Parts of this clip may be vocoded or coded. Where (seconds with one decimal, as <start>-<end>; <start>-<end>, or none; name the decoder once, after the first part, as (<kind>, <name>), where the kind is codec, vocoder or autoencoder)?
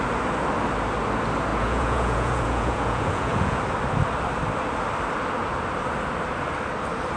1.5-3.6 (vocoder, Vocos)